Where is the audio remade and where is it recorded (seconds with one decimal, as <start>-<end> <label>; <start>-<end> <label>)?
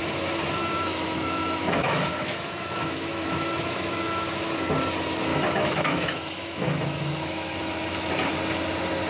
0.0-0.6 recorded; 0.6-4.3 remade; 4.3-5.3 recorded; 5.3-8.1 remade; 8.1-9.1 recorded